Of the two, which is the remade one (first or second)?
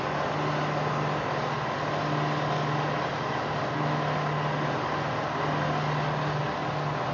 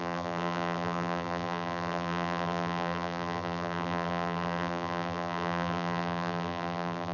second